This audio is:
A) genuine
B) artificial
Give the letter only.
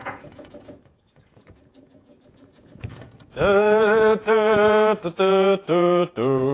B